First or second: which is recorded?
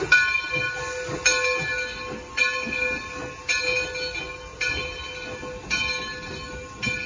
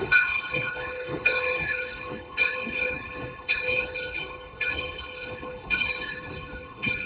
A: first